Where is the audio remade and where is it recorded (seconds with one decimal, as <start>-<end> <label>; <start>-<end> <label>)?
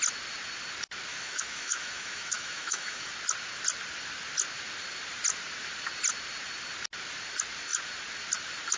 0.0-1.1 recorded; 1.1-3.1 remade; 3.1-8.8 recorded